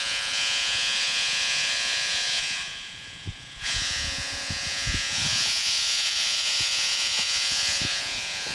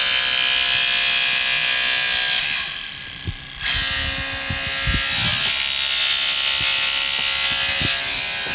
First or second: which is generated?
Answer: first